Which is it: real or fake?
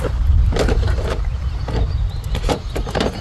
real